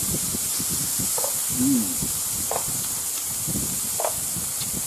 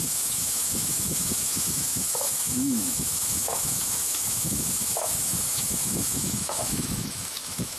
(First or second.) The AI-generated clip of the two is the second